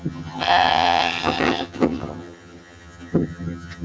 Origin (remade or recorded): remade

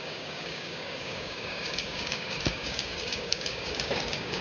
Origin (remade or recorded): remade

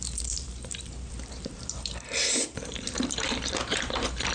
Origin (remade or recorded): remade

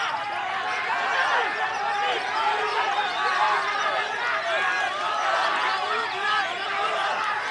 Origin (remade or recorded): recorded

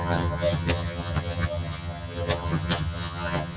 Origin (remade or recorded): remade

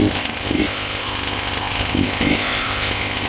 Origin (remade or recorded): remade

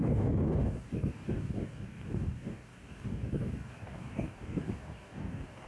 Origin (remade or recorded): remade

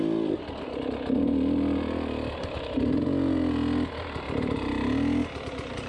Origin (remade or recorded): recorded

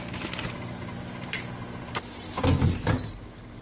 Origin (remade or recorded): recorded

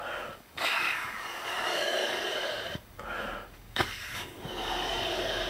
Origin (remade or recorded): remade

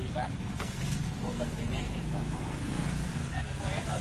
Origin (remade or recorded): remade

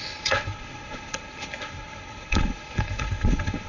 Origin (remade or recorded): remade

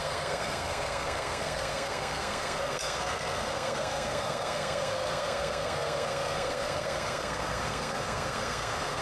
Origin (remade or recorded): remade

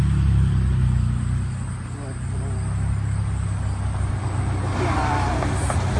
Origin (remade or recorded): recorded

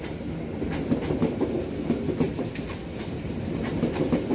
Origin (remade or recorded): recorded